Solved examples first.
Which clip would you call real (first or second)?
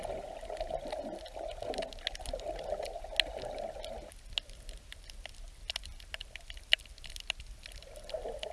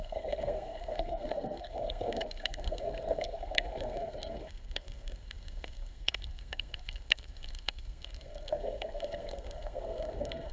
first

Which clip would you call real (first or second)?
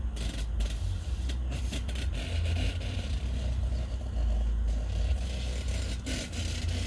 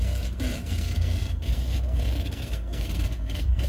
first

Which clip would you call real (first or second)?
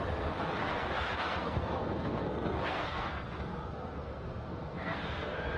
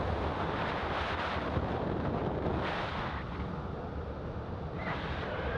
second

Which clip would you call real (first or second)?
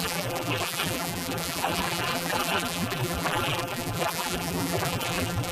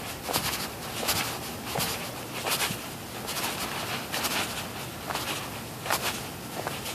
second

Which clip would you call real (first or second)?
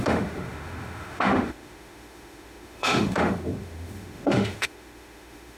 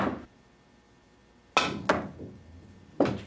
second